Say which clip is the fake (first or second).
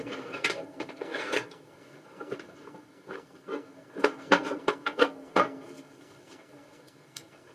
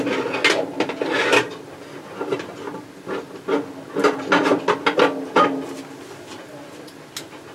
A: first